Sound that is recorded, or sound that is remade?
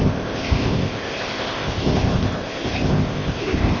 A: remade